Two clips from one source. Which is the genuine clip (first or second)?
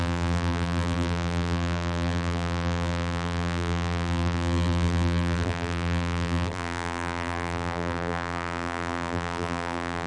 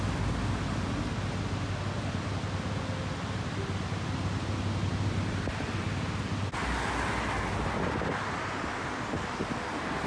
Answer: second